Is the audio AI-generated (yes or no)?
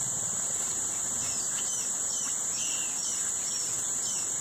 yes